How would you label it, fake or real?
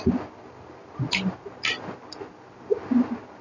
real